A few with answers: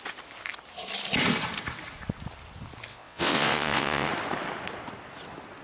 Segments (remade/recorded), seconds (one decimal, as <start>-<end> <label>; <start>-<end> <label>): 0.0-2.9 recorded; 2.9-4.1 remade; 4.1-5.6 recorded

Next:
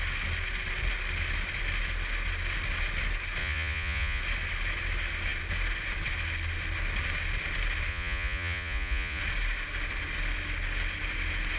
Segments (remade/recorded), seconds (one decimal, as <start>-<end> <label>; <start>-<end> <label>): 0.0-3.4 recorded; 3.4-4.2 remade; 4.2-7.9 recorded; 7.9-9.2 remade; 9.2-11.6 recorded

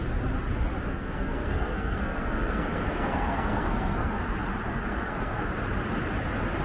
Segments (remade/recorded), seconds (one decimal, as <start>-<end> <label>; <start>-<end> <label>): 0.0-0.9 recorded; 0.9-4.2 remade; 4.2-4.7 recorded; 4.7-5.5 remade; 5.5-6.6 recorded

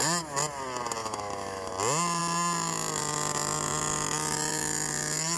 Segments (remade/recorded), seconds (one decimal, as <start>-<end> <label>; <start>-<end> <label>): 0.0-1.0 recorded; 1.0-1.7 remade; 1.7-5.4 recorded

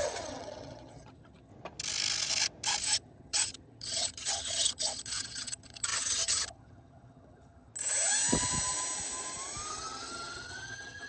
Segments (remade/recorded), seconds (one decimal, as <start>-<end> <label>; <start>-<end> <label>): 0.0-1.5 remade; 1.5-2.8 recorded; 2.8-7.7 remade; 7.7-9.7 recorded; 9.7-11.1 remade

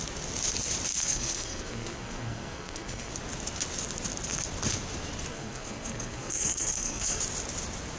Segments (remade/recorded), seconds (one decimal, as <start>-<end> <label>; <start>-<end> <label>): 0.0-0.9 recorded; 0.9-3.1 remade; 3.1-5.3 recorded; 5.3-7.2 remade; 7.2-8.0 recorded